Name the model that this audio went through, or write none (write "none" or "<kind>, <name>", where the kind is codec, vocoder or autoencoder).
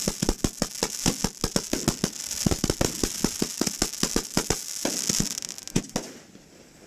none